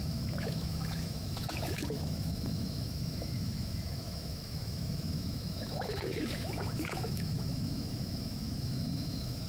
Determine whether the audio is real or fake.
fake